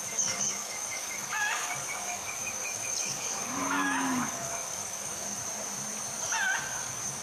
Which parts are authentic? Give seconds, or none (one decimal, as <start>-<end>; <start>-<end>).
5.4-6.6